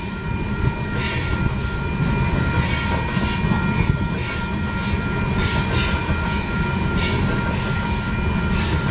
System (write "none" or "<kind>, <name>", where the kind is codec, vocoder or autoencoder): none